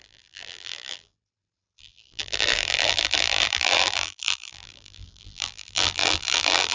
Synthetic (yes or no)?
yes